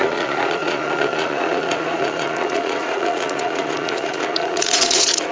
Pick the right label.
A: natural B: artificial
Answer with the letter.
B